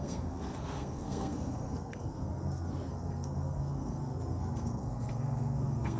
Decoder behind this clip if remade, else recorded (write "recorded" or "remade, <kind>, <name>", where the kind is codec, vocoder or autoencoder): remade, codec, SNAC